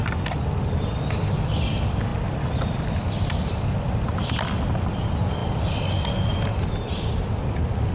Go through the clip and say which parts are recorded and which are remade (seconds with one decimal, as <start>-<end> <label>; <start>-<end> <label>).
0.0-7.9 recorded